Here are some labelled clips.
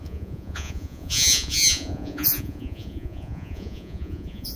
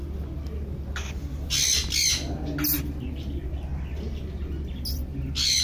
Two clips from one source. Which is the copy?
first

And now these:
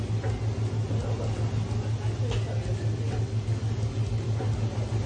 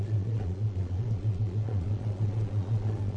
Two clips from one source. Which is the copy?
second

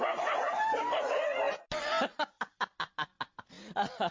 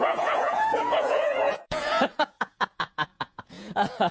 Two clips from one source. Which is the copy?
second